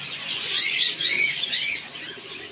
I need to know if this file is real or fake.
fake